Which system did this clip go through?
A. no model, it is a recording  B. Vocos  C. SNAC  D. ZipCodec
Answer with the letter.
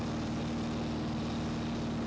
A